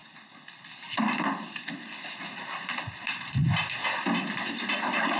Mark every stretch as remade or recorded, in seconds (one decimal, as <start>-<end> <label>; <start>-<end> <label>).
0.0-2.2 recorded; 2.2-3.4 remade; 3.4-5.2 recorded